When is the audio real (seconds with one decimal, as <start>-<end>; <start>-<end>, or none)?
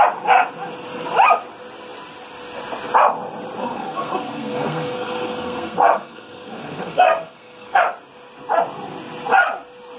0.0-3.6; 7.8-10.0